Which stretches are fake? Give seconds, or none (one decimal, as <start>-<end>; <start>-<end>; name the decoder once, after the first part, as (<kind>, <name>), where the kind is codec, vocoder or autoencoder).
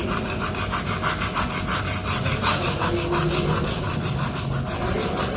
none